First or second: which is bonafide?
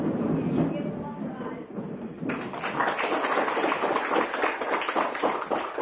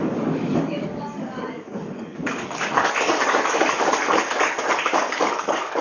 first